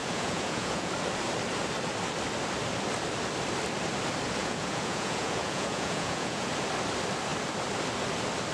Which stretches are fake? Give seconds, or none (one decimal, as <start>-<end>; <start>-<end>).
0.0-0.9; 4.4-6.5